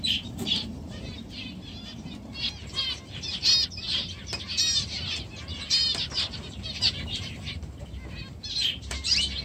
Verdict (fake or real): fake